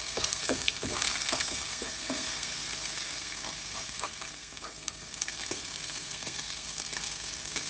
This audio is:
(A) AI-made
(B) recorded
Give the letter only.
A